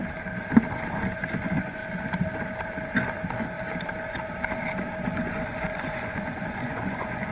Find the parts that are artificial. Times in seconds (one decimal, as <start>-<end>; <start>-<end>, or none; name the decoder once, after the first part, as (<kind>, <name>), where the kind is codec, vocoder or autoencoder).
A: 1.4-1.8 (vocoder, Vocos); 5.1-7.3